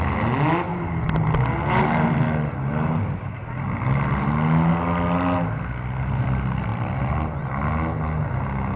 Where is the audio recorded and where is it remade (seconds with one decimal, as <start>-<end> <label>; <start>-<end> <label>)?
0.0-8.8 recorded